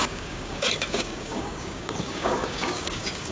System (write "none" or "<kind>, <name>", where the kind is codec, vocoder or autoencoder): codec, DAC